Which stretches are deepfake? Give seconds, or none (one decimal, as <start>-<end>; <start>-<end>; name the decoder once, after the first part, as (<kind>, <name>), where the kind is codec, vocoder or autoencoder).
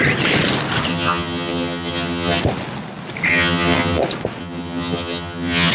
0.9-2.4 (vocoder, HiFi-GAN); 3.3-4.0; 4.4-5.7